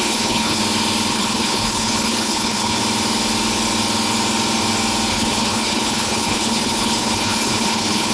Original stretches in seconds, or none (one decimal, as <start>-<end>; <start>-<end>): 0.6-1.1; 2.8-5.1